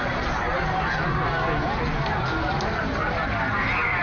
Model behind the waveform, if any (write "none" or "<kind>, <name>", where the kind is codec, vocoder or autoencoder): none